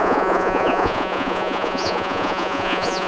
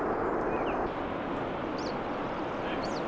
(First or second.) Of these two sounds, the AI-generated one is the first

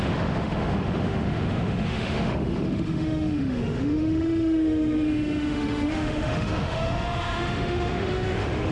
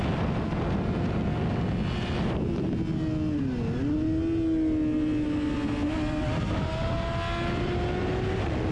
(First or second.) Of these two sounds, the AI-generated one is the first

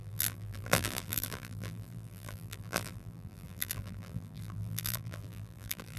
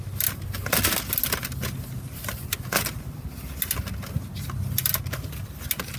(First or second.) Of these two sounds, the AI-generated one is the first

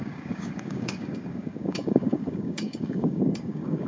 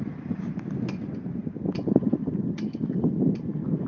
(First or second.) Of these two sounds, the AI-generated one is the first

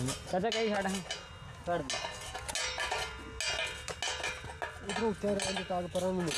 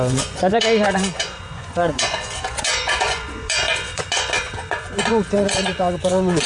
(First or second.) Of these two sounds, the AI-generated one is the second